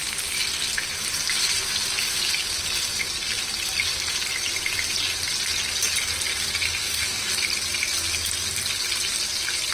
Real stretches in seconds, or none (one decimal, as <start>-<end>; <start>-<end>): 0.0-6.8; 7.3-9.7